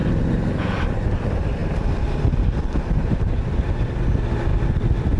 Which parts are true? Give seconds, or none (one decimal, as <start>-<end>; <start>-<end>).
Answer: 0.6-1.6; 4.1-4.5